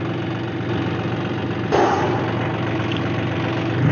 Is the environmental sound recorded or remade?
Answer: recorded